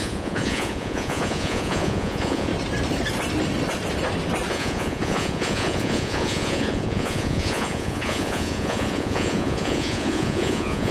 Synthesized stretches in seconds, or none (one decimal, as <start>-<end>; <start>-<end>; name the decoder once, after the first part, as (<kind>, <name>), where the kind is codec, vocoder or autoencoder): 0.0-2.5 (vocoder, Vocos); 4.5-10.9